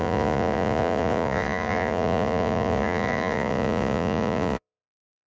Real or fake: fake